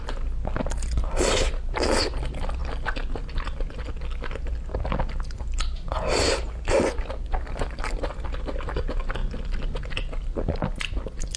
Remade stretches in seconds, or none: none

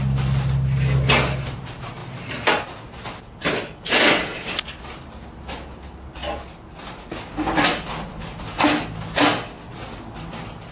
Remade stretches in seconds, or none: none

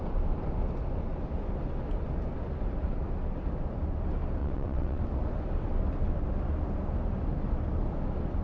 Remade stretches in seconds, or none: 4.4-5.0

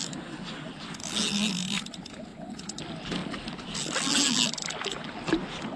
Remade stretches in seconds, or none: 2.3-2.8

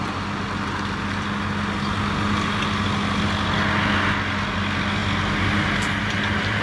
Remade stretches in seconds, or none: none

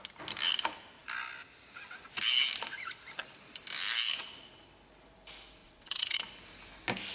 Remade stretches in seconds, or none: 5.6-6.2

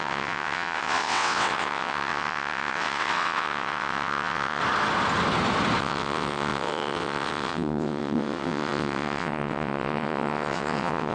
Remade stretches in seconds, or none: 0.0-4.6; 5.8-11.1